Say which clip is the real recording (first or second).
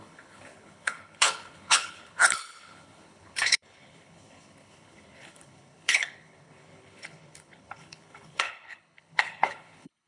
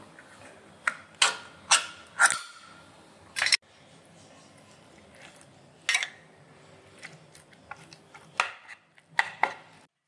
second